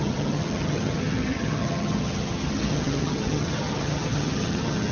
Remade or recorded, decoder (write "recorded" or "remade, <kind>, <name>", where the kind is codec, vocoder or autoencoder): remade, vocoder, HiFi-GAN